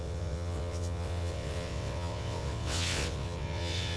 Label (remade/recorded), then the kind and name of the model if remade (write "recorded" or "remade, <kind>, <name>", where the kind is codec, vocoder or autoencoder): remade, vocoder, WaveNeXt